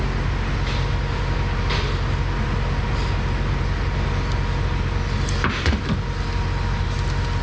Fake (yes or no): no